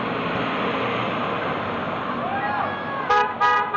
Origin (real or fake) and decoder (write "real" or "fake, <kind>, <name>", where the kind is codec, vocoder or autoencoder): real